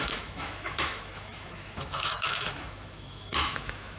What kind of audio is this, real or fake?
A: fake